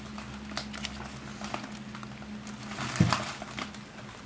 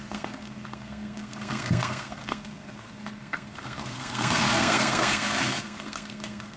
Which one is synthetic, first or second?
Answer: second